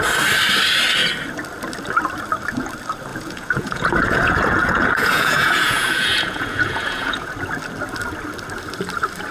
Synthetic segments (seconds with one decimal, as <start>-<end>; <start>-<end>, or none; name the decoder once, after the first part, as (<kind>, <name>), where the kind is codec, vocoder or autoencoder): 3.1-7.3 (vocoder, Vocos)